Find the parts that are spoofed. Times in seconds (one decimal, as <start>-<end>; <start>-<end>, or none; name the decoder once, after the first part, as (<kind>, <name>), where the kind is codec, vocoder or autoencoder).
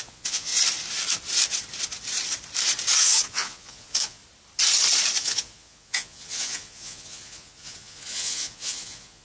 0.0-0.5 (vocoder, Vocos); 3.0-4.2; 5.2-9.2